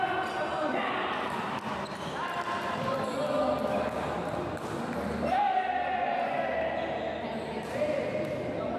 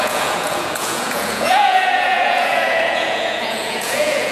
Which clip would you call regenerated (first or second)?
second